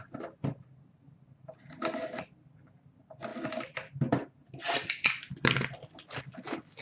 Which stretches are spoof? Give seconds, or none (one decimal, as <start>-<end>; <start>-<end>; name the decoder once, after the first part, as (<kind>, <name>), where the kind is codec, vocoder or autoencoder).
none